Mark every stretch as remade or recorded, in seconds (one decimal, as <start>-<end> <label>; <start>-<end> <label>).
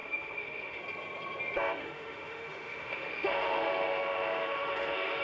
0.0-0.8 remade; 0.8-1.8 recorded; 1.8-5.2 remade